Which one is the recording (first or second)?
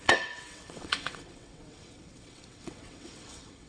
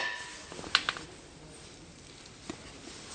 second